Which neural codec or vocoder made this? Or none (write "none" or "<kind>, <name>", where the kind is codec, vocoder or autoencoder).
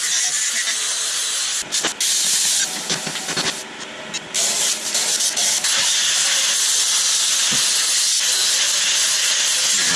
none